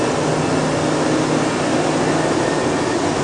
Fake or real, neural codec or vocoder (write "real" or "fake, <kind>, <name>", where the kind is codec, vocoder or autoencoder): real